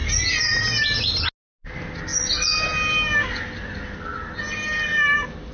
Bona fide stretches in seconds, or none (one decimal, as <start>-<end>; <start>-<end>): 0.0-5.5